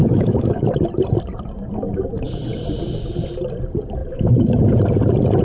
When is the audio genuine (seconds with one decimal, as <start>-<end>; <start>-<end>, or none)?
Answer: 0.6-4.0; 4.7-5.4